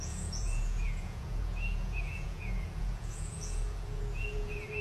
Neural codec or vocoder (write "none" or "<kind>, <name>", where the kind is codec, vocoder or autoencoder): vocoder, Vocos